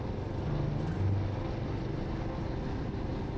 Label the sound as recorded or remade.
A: recorded